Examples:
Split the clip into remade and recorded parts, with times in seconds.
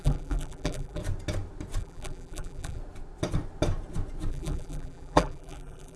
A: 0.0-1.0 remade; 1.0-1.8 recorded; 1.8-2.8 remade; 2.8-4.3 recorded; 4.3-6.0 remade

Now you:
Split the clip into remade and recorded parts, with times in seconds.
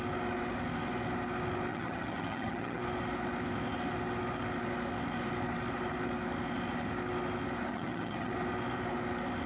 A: 0.0-1.7 recorded; 1.7-2.8 remade; 2.8-7.7 recorded; 7.7-8.3 remade; 8.3-9.5 recorded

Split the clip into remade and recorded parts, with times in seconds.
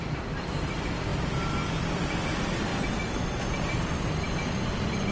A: 0.0-1.1 remade; 1.1-1.9 recorded; 1.9-2.7 remade; 2.7-5.1 recorded